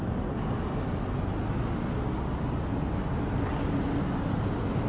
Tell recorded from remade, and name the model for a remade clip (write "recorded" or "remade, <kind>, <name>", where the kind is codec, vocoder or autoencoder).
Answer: recorded